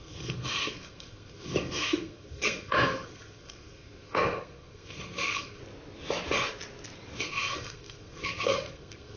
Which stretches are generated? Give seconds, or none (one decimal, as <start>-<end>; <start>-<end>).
0.0-5.6; 7.2-9.2